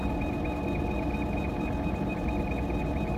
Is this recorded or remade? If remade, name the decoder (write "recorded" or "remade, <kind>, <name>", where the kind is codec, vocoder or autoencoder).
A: recorded